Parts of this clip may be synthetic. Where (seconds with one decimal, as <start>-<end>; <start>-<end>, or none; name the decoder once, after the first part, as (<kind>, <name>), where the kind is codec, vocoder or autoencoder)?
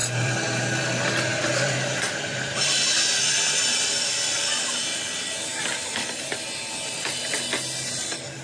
0.0-0.8 (vocoder, BigVGAN v2); 1.3-4.8